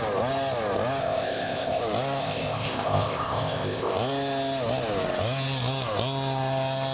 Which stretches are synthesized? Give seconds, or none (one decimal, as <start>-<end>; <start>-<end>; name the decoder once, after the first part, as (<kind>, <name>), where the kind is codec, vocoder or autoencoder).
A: 1.0-1.8 (codec, ZipCodec); 2.2-3.9